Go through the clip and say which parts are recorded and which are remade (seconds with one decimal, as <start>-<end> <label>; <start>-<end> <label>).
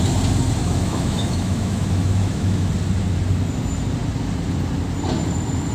0.0-0.6 recorded; 0.6-2.7 remade; 2.7-5.7 recorded